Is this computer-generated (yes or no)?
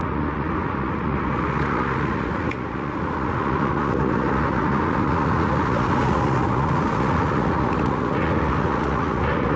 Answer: yes